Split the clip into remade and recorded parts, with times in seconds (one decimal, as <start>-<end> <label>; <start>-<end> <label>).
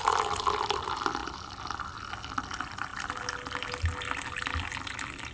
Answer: 0.0-5.3 recorded